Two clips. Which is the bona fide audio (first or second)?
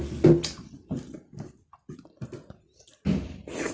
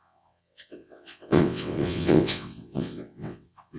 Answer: first